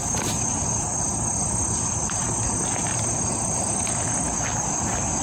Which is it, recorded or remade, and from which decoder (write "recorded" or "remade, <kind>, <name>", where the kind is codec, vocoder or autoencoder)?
recorded